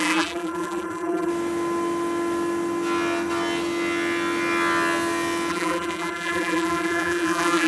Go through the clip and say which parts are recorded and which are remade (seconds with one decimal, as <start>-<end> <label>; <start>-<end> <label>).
0.0-1.3 remade; 1.3-5.5 recorded; 5.5-7.7 remade